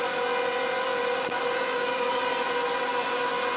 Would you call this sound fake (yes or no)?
no